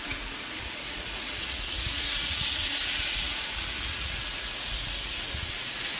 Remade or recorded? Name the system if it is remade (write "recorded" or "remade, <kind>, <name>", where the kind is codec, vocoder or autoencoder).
remade, vocoder, Vocos